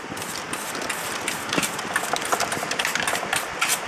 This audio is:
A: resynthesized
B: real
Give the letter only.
B